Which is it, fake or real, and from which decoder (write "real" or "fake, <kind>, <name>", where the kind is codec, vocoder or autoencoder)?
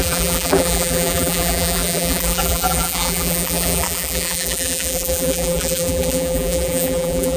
fake, vocoder, BigVGAN v2